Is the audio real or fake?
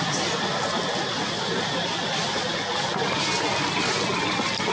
real